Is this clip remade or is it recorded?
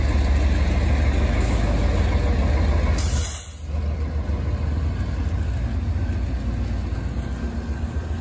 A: recorded